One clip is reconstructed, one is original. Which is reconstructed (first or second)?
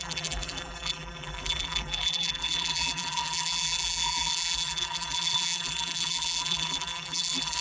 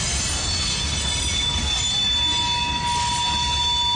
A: first